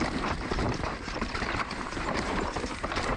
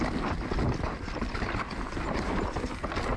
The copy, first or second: first